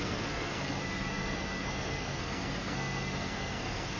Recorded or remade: remade